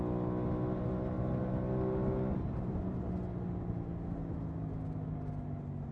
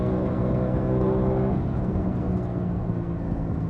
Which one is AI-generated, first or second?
second